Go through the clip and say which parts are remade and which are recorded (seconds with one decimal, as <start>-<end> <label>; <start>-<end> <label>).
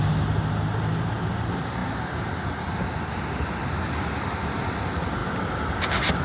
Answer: 0.0-6.2 recorded